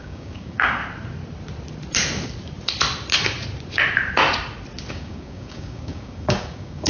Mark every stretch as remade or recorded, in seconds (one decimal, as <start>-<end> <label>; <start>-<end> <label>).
0.0-0.8 remade; 0.8-4.9 recorded; 4.9-6.9 remade

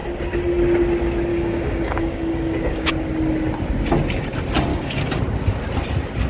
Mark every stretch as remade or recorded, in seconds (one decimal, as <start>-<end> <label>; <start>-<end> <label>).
0.0-1.3 recorded; 1.3-2.9 remade; 2.9-4.7 recorded; 4.7-5.2 remade; 5.2-6.3 recorded

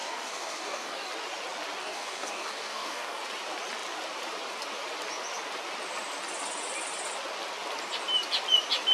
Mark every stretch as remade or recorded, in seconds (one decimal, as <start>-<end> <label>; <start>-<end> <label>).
0.0-1.1 remade; 1.1-1.8 recorded; 1.8-3.2 remade; 3.2-8.9 recorded

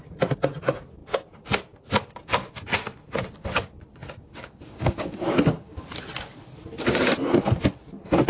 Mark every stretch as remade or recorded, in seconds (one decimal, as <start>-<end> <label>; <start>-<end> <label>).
0.0-3.9 recorded; 3.9-5.7 remade; 5.7-8.3 recorded